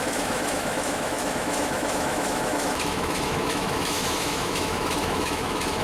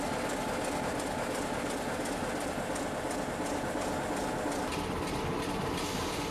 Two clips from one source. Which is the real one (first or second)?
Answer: second